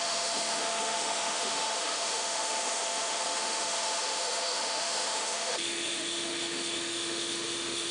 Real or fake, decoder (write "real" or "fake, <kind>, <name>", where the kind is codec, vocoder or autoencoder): fake, autoencoder, DAC-VAE